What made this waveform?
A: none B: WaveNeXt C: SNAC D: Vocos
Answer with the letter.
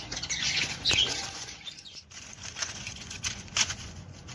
D